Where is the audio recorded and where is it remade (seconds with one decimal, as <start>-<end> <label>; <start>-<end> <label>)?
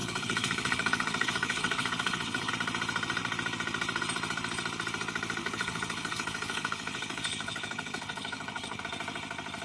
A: 0.0-2.5 remade; 2.5-5.4 recorded; 5.4-8.8 remade; 8.8-9.6 recorded